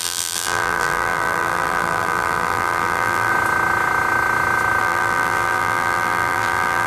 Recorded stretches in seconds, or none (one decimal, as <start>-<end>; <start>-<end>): 3.3-4.8